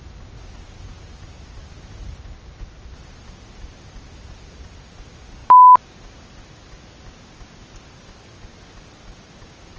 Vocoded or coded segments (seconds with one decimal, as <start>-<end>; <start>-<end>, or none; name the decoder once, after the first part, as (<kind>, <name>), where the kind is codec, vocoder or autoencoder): none